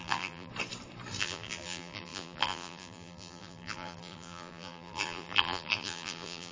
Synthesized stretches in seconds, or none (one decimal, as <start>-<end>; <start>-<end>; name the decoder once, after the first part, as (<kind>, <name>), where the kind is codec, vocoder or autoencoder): 0.0-0.5 (vocoder, BigVGAN v2); 1.2-6.5